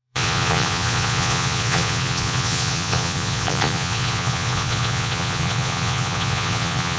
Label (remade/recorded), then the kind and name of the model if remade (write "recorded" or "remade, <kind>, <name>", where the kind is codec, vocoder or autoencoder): remade, vocoder, Vocos